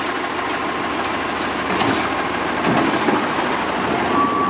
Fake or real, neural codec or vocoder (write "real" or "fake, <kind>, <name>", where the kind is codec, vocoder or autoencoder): real